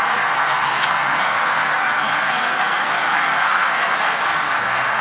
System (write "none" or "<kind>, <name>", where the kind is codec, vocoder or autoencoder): codec, SNAC